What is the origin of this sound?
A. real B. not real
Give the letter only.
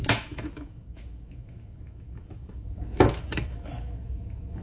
B